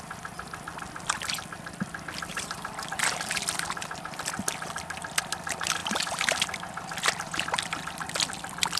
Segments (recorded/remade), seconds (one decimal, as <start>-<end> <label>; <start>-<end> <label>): 0.0-2.3 recorded; 2.3-2.8 remade; 2.8-8.8 recorded